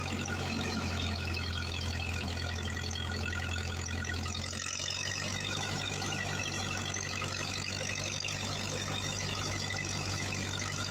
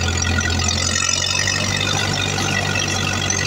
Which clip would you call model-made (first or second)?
first